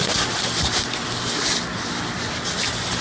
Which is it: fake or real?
real